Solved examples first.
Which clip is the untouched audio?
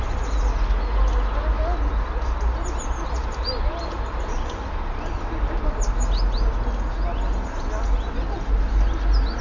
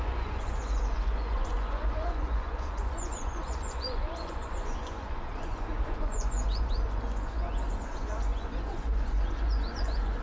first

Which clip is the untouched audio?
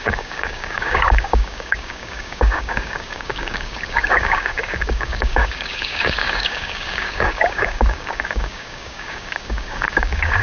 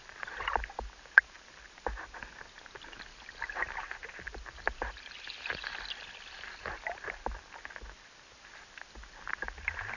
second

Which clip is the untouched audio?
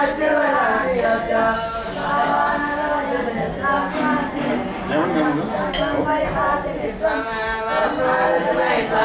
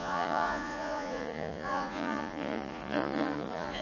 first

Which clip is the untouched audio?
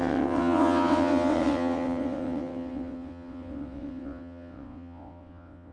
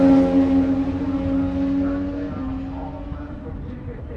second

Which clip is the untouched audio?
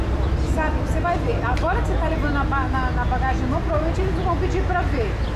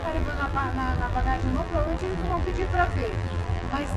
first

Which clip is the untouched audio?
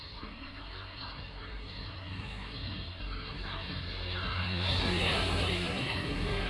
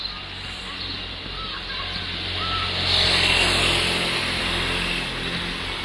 second